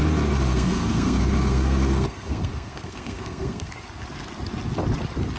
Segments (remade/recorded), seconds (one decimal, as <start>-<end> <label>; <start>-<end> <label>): 0.0-0.5 recorded; 0.5-3.7 remade; 3.7-5.4 recorded